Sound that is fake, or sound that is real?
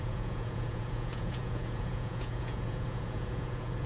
fake